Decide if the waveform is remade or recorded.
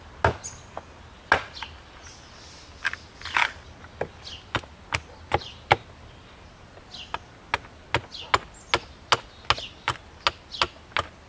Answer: recorded